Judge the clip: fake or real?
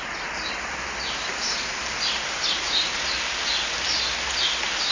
real